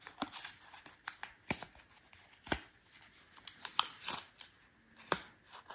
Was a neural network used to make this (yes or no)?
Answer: no